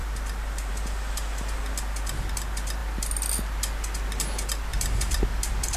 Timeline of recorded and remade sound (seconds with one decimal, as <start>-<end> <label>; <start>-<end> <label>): 0.0-5.8 recorded